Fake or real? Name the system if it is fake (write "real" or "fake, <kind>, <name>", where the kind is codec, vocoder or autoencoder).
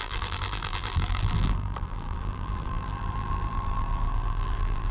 fake, vocoder, BigVGAN v2